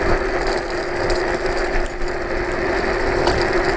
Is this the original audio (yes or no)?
yes